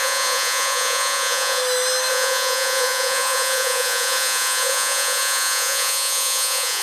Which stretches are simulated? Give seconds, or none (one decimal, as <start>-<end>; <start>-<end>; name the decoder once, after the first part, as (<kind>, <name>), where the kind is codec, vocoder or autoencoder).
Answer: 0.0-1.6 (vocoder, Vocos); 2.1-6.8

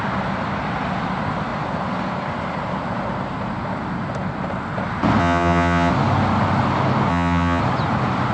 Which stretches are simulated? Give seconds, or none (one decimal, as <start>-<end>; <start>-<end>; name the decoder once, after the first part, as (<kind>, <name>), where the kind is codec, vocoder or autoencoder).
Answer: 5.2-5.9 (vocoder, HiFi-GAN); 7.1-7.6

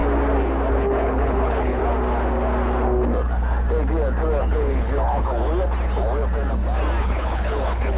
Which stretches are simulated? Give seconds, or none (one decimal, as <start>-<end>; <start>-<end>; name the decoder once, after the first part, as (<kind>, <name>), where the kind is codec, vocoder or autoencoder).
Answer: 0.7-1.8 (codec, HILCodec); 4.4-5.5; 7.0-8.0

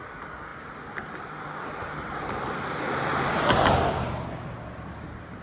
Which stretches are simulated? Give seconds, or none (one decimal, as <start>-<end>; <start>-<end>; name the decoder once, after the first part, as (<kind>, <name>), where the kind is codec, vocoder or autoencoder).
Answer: none

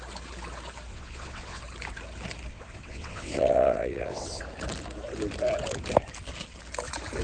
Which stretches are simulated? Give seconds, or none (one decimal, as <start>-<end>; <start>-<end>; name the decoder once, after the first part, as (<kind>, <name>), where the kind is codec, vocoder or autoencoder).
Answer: 0.9-1.6 (vocoder, WaveNeXt); 2.5-4.4

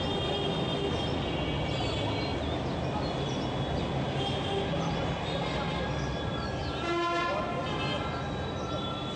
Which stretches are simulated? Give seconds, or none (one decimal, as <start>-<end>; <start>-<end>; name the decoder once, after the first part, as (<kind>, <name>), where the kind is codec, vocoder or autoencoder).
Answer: none